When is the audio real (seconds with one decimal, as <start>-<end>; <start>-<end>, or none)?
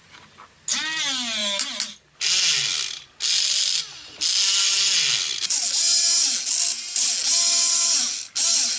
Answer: 0.0-8.8